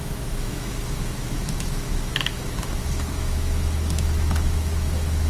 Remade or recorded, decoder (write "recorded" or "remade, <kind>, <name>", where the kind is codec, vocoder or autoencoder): remade, autoencoder, DAC-VAE